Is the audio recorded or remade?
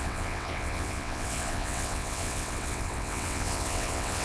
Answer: remade